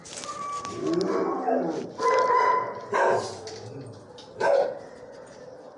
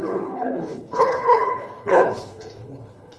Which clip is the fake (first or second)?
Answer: second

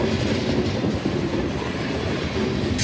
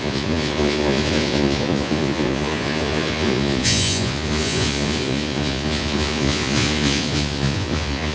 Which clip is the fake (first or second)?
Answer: second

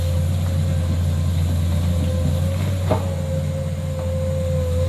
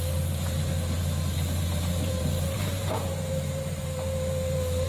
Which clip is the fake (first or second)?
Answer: second